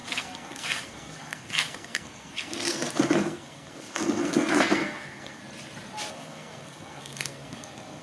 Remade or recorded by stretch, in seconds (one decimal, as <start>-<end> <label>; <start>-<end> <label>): 0.0-5.4 remade; 5.4-6.1 recorded; 6.1-8.0 remade